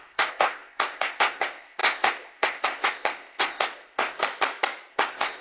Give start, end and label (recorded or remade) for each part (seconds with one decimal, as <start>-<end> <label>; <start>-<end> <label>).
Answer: 0.0-4.2 remade; 4.2-4.9 recorded; 4.9-5.4 remade